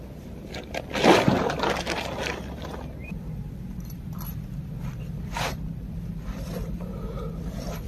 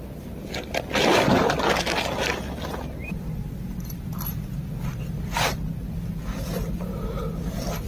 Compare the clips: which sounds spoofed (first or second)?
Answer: first